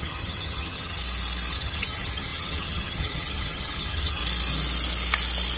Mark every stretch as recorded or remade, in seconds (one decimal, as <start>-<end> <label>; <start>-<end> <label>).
0.0-1.0 remade; 1.0-1.5 recorded; 1.5-4.2 remade; 4.2-5.6 recorded